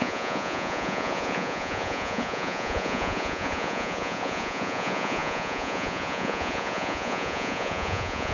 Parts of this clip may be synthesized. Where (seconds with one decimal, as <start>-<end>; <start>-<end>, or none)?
0.0-8.3